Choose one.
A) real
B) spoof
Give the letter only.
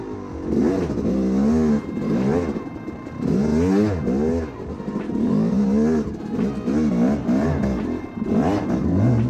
A